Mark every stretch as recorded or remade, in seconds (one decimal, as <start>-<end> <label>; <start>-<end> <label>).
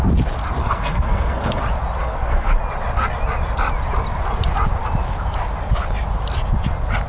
0.0-0.6 recorded; 0.6-1.6 remade; 1.6-2.0 recorded; 2.0-2.5 remade; 2.5-7.1 recorded